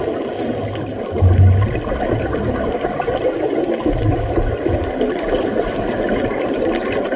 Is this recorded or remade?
recorded